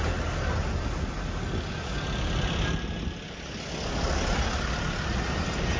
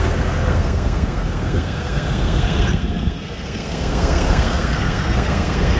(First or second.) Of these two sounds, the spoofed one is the second